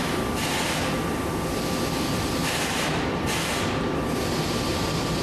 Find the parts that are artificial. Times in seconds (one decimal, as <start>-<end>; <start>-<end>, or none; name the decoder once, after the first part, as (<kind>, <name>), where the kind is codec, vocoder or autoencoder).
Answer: 1.0-4.1 (vocoder, BigVGAN v2)